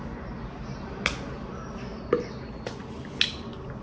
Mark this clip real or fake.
real